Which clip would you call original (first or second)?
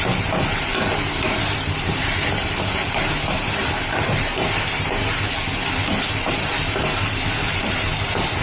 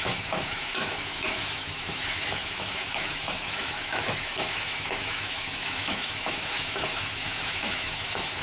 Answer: first